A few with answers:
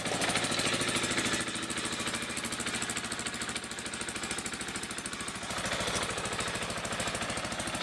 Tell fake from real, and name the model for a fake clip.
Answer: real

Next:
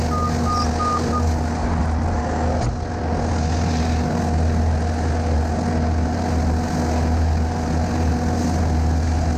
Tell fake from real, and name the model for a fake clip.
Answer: real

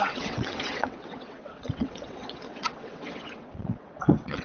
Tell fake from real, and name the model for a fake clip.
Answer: fake, vocoder, WaveNeXt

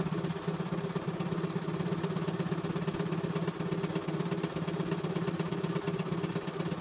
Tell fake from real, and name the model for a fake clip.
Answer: real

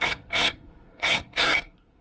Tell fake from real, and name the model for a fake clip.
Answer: fake, codec, SNAC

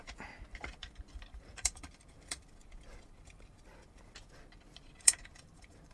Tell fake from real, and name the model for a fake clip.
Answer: fake, vocoder, BigVGAN v2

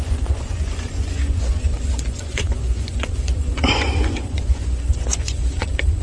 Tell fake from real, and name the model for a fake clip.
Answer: fake, vocoder, Vocos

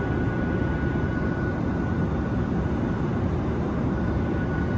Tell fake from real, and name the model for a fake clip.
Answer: real